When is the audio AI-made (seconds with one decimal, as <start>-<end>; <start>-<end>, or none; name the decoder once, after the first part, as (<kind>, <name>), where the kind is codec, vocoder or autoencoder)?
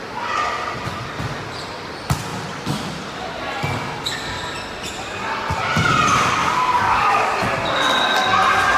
6.4-7.3 (codec, DAC)